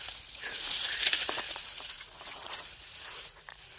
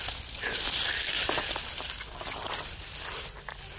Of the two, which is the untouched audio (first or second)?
second